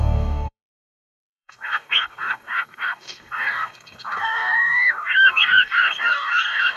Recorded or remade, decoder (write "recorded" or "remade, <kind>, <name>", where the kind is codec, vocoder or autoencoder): remade, codec, DAC